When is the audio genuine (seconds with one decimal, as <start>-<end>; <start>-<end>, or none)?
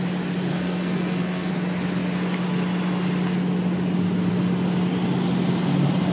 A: 0.0-0.5; 1.5-6.1